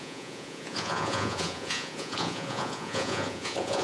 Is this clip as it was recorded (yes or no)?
no